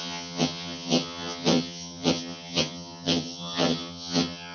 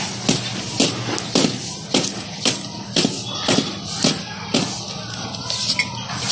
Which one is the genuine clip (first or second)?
second